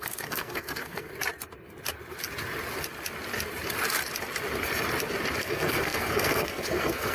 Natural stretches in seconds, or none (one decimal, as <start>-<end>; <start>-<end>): 1.1-5.4